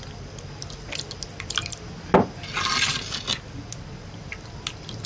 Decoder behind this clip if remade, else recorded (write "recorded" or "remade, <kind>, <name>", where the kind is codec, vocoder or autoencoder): recorded